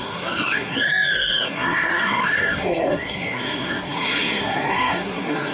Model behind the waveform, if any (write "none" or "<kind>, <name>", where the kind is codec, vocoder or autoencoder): codec, SNAC